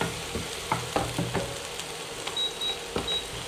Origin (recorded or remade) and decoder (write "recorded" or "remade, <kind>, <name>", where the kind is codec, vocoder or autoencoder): recorded